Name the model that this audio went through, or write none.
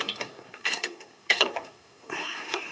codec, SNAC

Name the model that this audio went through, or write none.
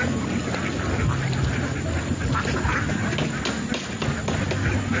none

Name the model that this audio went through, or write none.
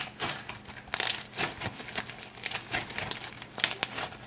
none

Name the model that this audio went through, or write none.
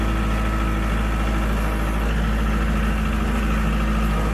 none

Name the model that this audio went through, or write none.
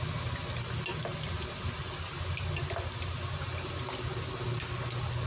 none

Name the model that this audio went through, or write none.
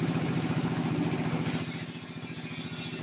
none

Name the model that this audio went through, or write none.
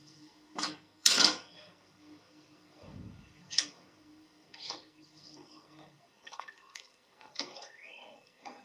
codec, SNAC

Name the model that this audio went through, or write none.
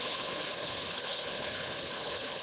codec, HILCodec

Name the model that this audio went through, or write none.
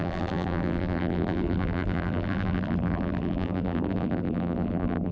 vocoder, BigVGAN v2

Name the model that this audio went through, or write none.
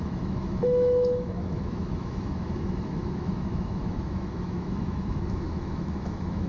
autoencoder, DAC-VAE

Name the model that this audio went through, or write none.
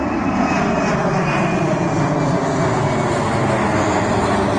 none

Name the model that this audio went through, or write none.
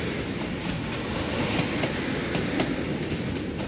none